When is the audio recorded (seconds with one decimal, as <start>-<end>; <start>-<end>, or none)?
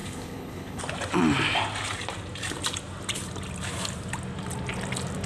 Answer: 0.8-5.3